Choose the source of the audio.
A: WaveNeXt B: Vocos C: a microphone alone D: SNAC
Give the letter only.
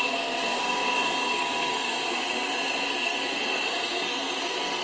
D